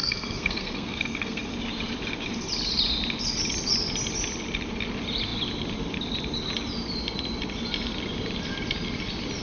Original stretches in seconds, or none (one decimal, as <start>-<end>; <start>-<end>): 1.5-9.4